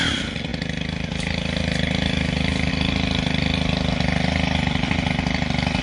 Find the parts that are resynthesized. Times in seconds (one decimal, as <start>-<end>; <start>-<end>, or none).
none